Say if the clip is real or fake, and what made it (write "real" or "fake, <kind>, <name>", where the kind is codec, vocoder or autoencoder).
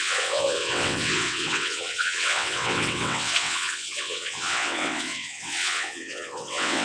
fake, vocoder, WaveNeXt